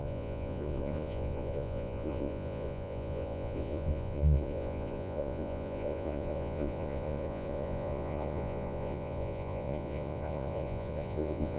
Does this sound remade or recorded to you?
remade